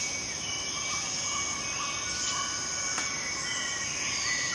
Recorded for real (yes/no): yes